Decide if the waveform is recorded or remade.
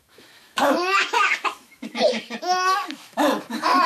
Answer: remade